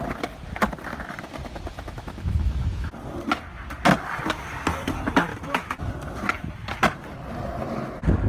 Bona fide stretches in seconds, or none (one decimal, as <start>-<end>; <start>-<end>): 0.0-1.7; 2.9-5.3; 5.9-8.3